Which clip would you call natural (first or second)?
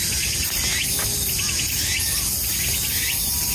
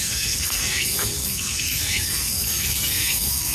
first